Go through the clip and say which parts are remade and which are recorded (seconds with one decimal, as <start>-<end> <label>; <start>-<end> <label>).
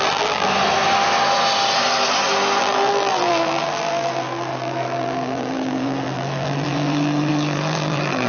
0.0-0.5 remade; 0.5-2.6 recorded; 2.6-8.3 remade